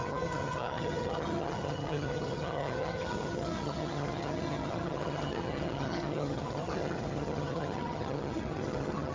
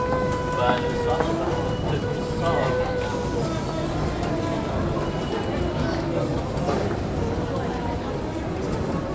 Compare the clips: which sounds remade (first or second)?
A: first